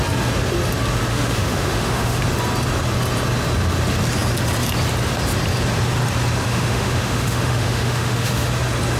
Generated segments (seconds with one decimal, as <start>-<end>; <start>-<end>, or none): 1.1-2.2; 6.5-8.5